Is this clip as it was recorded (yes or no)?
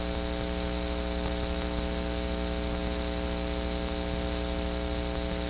yes